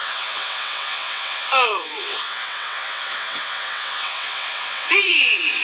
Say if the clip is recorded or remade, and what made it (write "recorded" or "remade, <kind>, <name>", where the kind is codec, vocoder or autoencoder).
remade, vocoder, WaveNeXt